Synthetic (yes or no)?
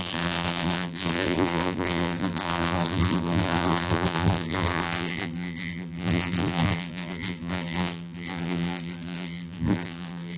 yes